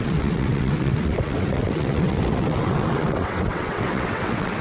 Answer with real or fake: fake